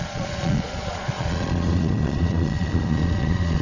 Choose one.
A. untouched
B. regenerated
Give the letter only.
B